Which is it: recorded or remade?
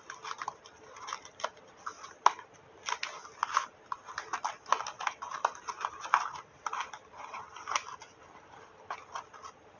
recorded